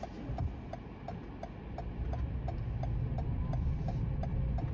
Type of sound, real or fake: real